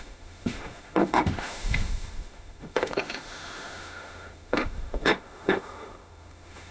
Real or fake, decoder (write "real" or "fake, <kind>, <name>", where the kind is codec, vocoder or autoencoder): fake, autoencoder, DAC-VAE